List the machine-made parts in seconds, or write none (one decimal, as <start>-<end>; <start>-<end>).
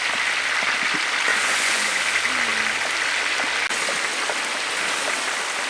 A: 1.3-2.0